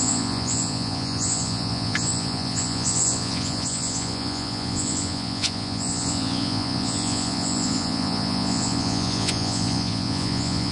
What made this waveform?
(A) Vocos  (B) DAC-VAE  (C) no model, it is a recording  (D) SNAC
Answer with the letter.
A